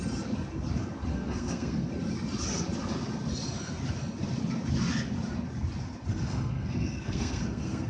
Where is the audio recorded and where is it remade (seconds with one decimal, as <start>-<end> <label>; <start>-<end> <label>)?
0.0-1.1 recorded; 1.1-1.9 remade; 1.9-6.1 recorded; 6.1-7.9 remade